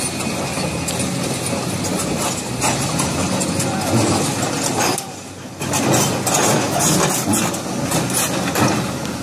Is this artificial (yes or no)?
no